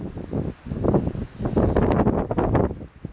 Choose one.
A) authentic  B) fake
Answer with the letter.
A